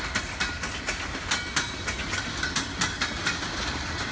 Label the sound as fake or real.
real